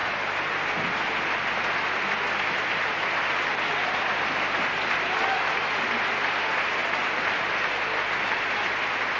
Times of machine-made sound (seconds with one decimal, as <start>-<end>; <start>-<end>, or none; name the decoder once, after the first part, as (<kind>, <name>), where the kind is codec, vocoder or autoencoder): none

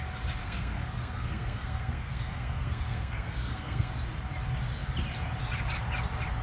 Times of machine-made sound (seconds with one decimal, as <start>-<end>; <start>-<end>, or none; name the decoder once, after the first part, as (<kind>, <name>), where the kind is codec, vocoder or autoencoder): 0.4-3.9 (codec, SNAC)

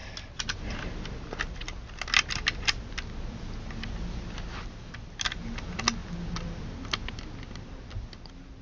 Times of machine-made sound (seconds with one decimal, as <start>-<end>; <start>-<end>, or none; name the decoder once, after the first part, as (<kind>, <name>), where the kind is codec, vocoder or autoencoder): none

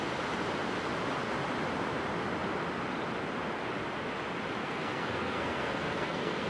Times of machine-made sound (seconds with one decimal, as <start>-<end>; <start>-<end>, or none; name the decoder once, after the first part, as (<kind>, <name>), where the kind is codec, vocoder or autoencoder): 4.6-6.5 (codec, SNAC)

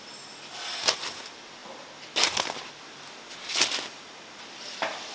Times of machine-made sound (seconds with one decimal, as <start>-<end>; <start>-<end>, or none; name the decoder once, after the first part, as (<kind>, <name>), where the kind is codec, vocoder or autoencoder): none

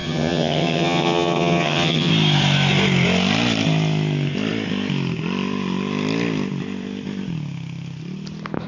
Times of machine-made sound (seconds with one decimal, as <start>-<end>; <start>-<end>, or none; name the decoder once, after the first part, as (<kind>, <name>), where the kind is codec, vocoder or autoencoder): 0.0-2.1 (vocoder, HiFi-GAN)

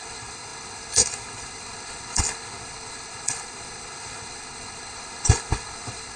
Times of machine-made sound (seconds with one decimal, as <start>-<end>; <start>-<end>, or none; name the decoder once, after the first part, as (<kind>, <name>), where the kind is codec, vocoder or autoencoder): 0.0-6.2 (codec, HILCodec)